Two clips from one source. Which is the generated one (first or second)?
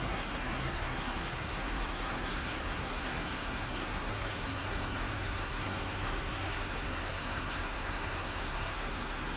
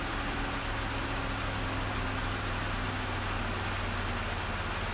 first